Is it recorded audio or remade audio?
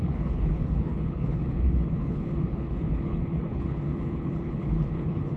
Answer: remade